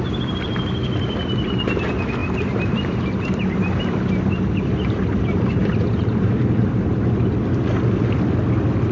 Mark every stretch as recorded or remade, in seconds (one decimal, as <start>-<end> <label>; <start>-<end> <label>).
0.0-2.2 recorded; 2.2-7.1 remade; 7.1-8.9 recorded